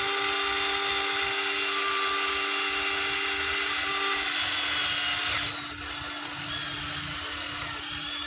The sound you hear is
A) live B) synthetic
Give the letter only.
A